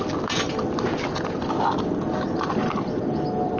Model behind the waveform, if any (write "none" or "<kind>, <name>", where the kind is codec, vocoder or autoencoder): none